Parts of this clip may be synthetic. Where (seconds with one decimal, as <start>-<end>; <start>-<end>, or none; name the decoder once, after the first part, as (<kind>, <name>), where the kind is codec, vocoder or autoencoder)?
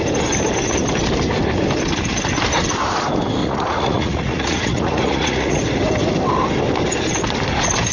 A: 3.4-5.6 (vocoder, Vocos)